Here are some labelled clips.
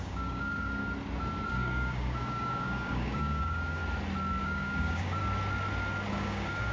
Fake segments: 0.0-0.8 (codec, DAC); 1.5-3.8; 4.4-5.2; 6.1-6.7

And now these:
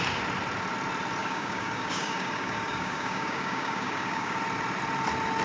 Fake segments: 1.2-4.4 (codec, DAC)